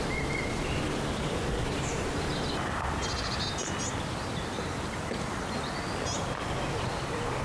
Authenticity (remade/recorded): recorded